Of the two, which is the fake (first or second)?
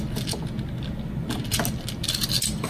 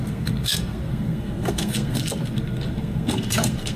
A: second